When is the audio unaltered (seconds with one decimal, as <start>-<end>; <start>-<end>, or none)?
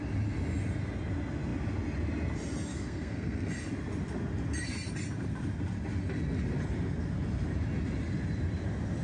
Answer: 0.0-2.7; 3.5-9.0